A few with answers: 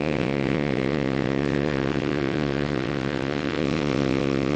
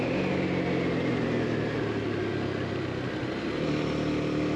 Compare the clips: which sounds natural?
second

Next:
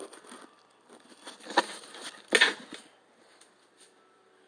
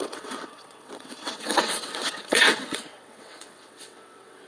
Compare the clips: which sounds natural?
first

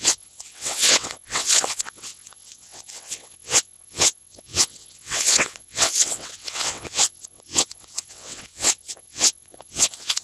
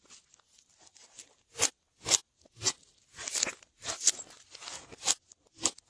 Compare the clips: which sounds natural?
second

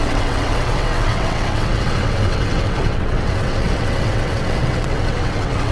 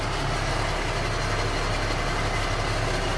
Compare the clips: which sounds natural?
second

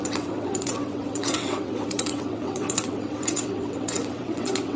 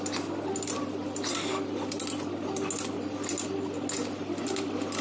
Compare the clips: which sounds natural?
second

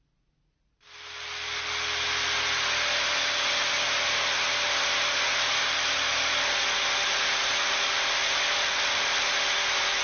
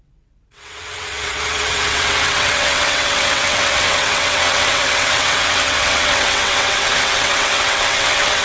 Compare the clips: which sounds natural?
first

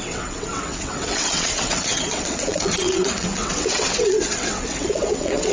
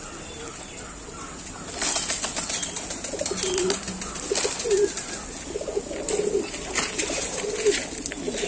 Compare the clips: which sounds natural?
second